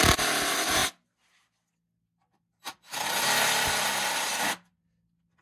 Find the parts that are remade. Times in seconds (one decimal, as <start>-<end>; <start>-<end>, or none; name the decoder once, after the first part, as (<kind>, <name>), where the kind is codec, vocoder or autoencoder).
none